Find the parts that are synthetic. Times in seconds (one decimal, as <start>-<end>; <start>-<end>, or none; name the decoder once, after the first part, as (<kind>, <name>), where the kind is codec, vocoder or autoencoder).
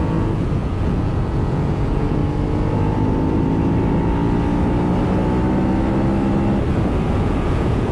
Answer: 0.0-2.2 (vocoder, Vocos); 6.7-7.9